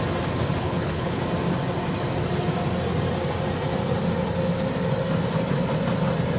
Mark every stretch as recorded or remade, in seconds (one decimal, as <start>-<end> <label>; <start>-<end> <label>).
0.0-0.6 recorded; 0.6-1.2 remade; 1.2-6.4 recorded